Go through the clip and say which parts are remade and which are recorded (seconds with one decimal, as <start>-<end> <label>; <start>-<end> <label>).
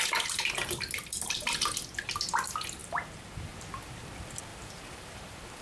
0.0-2.8 recorded; 2.8-4.1 remade; 4.1-4.5 recorded; 4.5-5.6 remade